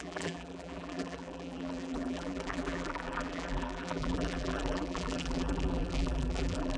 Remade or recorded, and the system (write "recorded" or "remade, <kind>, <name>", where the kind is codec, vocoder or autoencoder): remade, vocoder, BigVGAN v2